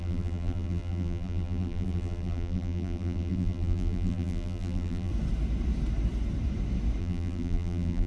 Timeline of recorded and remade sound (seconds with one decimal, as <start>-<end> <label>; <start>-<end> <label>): 0.0-5.1 remade; 5.1-7.0 recorded; 7.0-8.1 remade